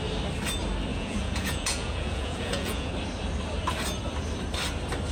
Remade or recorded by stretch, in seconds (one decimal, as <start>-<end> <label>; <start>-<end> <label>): 0.0-0.9 recorded; 0.9-2.9 remade; 2.9-5.1 recorded